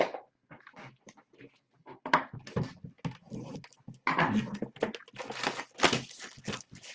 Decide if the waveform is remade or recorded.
recorded